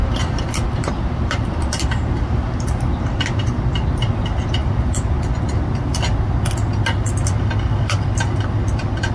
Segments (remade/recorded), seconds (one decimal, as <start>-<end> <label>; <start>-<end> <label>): 0.0-3.6 remade; 3.6-9.1 recorded